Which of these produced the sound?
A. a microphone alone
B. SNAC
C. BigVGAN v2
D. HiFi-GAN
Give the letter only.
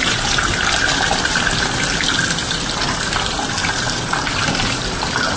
A